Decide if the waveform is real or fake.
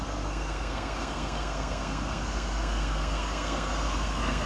fake